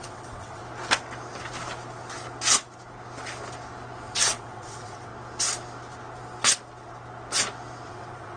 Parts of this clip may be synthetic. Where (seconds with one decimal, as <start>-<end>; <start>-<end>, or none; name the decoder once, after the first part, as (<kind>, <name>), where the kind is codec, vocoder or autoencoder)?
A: 0.0-0.6 (vocoder, WaveNeXt); 4.1-5.1; 7.9-8.4